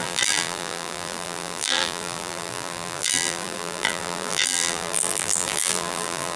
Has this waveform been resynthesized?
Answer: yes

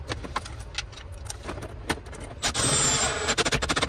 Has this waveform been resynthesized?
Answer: no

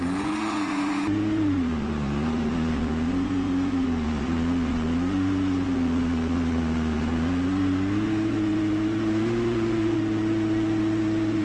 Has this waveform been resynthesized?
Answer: yes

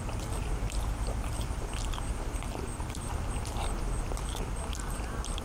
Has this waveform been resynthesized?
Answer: no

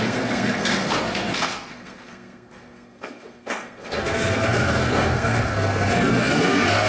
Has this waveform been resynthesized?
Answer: yes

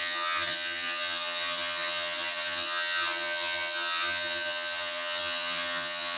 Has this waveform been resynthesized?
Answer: yes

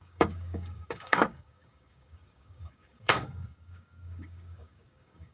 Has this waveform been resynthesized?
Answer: yes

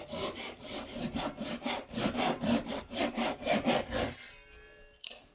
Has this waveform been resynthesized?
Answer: no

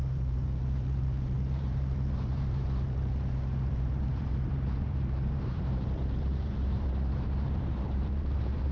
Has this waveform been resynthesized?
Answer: yes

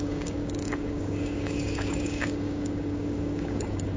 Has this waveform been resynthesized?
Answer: yes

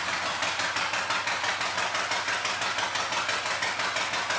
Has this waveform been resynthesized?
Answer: no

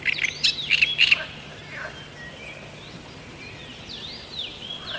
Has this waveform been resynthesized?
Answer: no